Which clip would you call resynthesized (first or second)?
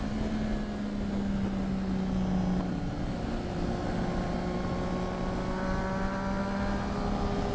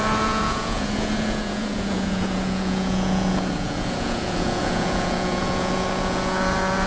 second